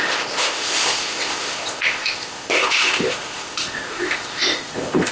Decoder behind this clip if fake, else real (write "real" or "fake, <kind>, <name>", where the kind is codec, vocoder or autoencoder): fake, codec, ZipCodec